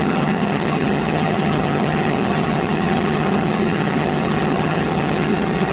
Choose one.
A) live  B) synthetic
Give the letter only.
B